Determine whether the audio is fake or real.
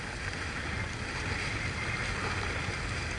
real